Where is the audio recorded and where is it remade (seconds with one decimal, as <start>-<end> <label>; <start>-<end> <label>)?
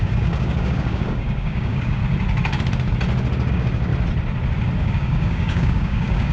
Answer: 0.0-2.0 remade; 2.0-3.5 recorded; 3.5-3.9 remade; 3.9-4.8 recorded; 4.8-6.3 remade